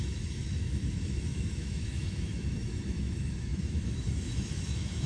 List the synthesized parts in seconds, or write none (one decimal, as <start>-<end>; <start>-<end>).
0.0-5.1